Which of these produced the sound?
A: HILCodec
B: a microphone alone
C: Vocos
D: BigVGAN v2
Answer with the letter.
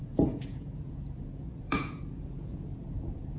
C